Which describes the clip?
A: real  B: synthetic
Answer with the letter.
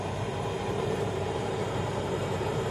B